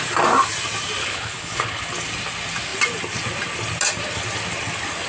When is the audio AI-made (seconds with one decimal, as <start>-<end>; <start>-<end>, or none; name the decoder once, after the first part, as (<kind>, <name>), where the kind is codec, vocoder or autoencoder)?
1.0-1.8 (codec, HILCodec)